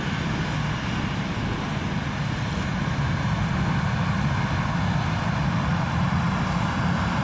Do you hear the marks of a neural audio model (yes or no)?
no